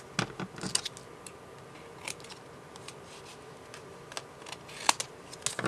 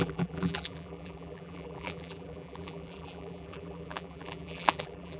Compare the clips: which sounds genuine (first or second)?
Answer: first